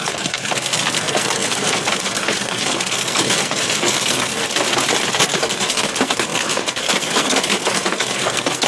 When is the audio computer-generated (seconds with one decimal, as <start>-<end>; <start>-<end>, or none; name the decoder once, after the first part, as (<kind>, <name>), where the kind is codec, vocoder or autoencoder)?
0.0-4.4 (codec, SNAC); 5.1-8.7